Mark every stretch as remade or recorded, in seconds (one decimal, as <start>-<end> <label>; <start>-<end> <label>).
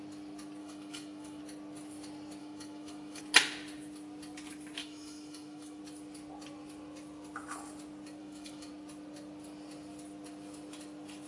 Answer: 0.0-0.6 recorded; 0.6-1.4 remade; 1.4-2.4 recorded; 2.4-3.2 remade; 3.2-4.8 recorded; 4.8-5.8 remade; 5.8-8.2 recorded; 8.2-8.7 remade; 8.7-11.3 recorded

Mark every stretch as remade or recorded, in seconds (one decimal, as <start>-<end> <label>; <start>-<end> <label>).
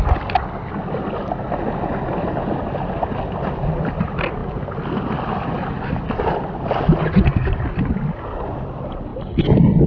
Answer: 0.0-9.9 recorded